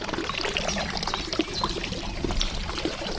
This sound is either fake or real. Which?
real